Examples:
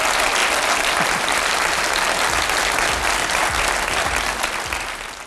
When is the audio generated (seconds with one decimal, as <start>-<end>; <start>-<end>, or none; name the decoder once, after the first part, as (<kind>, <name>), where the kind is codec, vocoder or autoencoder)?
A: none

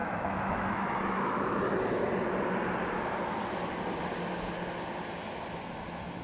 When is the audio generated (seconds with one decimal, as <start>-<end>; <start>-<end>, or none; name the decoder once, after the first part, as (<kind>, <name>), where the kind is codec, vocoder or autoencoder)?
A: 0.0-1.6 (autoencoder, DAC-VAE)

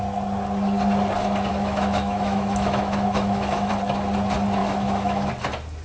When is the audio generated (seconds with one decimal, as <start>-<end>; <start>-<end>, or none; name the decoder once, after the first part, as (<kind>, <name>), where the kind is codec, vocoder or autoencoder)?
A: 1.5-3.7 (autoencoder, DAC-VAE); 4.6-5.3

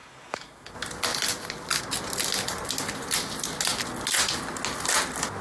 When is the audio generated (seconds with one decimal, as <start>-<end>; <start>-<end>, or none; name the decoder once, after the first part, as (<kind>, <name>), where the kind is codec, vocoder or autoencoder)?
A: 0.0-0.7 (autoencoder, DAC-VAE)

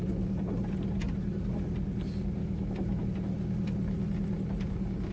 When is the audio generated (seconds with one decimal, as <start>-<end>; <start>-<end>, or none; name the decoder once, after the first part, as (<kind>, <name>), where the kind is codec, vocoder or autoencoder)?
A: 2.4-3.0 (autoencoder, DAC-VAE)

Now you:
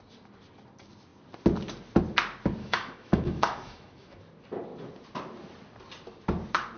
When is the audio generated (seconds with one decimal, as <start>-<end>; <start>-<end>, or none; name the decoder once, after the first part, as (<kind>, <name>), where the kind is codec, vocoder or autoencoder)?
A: 2.6-4.2 (autoencoder, DAC-VAE)